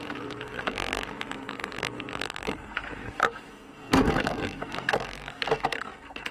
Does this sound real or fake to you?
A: fake